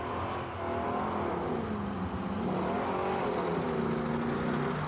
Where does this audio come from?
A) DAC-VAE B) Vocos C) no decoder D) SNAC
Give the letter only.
C